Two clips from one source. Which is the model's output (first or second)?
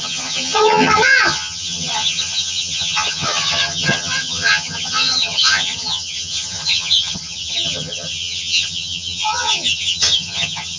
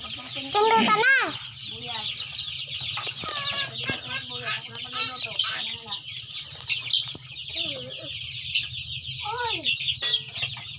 first